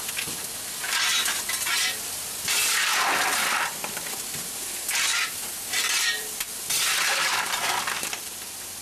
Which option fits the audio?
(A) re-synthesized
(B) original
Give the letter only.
A